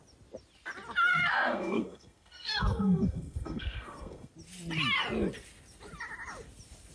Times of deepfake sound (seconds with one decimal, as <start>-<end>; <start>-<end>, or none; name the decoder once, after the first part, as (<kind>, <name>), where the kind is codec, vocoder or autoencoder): 1.1-4.3 (codec, SNAC)

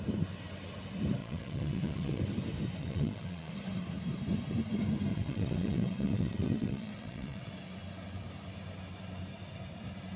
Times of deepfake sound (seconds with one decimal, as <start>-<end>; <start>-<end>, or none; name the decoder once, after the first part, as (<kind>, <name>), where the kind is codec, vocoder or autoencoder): 1.2-2.2 (vocoder, WaveNeXt); 2.8-3.5; 5.1-7.5

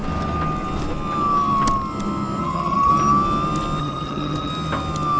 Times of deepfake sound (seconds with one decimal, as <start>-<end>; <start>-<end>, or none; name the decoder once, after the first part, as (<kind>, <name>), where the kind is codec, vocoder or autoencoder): 2.4-2.9 (vocoder, HiFi-GAN); 3.8-4.5

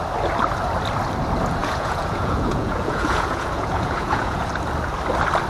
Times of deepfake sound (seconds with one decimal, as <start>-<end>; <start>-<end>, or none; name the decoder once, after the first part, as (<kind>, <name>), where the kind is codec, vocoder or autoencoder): 1.6-4.5 (vocoder, Vocos)

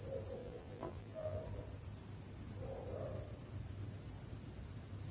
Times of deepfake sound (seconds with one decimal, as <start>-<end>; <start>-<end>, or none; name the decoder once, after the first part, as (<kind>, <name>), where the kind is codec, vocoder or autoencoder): 0.4-1.4 (vocoder, BigVGAN v2)